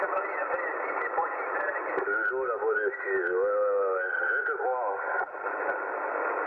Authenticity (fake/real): real